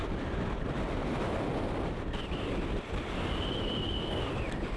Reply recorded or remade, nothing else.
recorded